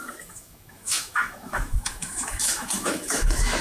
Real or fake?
fake